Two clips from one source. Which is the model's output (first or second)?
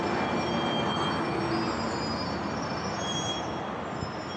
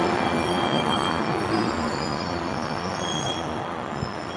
second